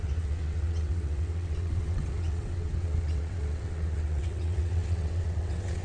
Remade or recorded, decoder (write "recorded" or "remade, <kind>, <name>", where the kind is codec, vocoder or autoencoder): remade, vocoder, WaveNeXt